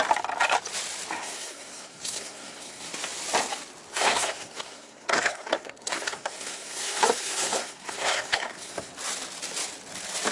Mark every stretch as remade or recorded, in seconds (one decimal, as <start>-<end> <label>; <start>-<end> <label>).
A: 0.0-1.2 recorded; 1.2-2.9 remade; 2.9-3.9 recorded; 3.9-8.9 remade; 8.9-10.3 recorded